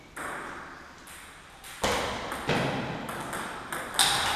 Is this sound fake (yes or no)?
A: no